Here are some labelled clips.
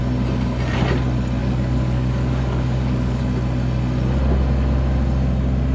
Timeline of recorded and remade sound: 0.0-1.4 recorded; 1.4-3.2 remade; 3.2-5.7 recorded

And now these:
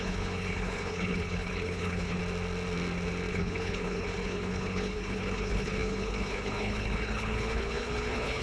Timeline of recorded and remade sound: 0.0-2.2 remade; 2.2-3.3 recorded; 3.3-8.4 remade

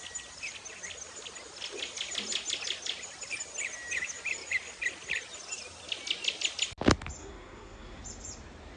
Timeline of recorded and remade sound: 0.0-7.2 recorded; 7.2-8.0 remade; 8.0-8.8 recorded